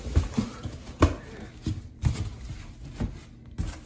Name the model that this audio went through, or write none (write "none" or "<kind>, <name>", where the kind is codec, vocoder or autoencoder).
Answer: none